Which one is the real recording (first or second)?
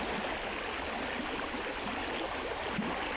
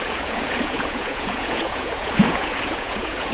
first